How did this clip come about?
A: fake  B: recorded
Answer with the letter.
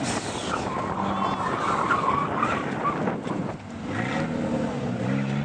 B